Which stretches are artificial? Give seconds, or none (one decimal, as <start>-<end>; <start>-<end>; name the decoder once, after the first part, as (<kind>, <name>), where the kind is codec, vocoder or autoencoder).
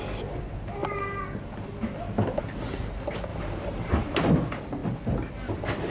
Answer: 3.3-4.3 (vocoder, BigVGAN v2)